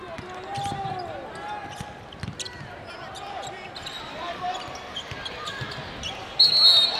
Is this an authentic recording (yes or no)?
yes